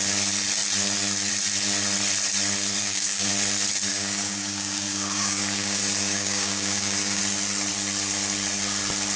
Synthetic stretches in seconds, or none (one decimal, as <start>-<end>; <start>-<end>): 2.8-3.3; 3.9-7.2